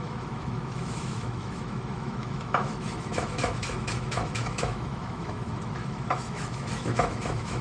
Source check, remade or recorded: remade